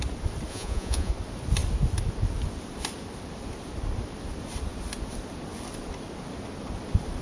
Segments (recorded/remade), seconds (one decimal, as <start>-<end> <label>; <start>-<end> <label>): 0.0-0.5 recorded; 0.5-1.1 remade; 1.1-7.2 recorded